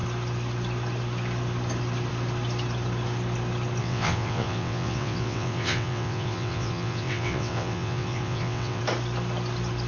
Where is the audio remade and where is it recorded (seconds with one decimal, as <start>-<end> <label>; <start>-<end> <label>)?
0.0-3.8 recorded; 3.8-8.8 remade; 8.8-9.9 recorded